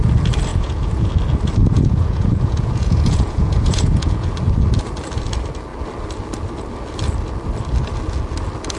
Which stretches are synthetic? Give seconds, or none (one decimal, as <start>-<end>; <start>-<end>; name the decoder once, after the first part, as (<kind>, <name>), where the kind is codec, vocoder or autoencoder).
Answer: 0.5-1.1 (vocoder, Vocos); 1.6-4.3